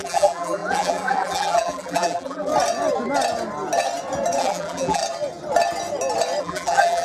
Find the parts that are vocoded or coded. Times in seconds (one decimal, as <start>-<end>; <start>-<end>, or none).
0.0-2.5; 4.4-5.0; 6.4-7.0